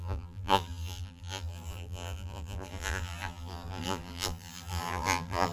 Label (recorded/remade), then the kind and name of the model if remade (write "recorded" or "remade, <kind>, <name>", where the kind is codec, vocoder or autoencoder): remade, vocoder, BigVGAN v2